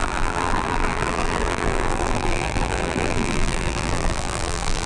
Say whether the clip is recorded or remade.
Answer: remade